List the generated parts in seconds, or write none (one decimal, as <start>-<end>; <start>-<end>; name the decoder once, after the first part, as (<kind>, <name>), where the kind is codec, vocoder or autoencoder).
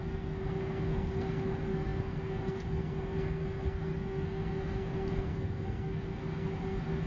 0.0-7.1 (codec, SNAC)